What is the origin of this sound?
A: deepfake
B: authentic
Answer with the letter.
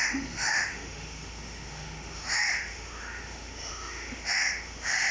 A